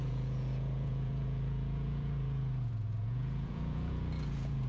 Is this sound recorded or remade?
remade